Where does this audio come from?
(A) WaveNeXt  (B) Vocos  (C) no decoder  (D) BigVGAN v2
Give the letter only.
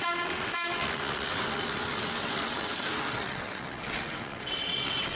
A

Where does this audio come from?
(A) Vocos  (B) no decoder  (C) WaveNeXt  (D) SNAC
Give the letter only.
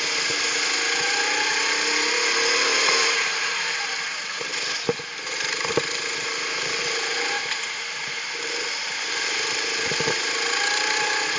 B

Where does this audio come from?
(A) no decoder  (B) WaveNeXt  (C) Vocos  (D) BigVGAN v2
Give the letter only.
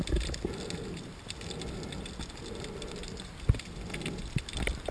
A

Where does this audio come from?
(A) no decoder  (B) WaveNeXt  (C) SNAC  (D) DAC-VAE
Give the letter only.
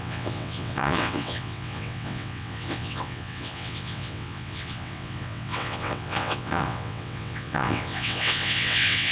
B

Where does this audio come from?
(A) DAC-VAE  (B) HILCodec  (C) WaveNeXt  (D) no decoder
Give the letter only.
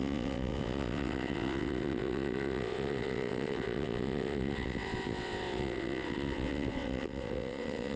C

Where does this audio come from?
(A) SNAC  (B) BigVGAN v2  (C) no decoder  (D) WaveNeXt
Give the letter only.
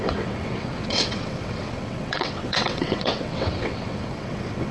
D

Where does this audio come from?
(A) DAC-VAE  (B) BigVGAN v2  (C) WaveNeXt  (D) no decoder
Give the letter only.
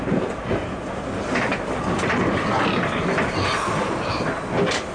D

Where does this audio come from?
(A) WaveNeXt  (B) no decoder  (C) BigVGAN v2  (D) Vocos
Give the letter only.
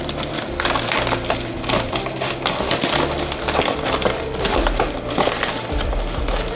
B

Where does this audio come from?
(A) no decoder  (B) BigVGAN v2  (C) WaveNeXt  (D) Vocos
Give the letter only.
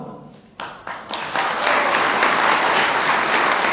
A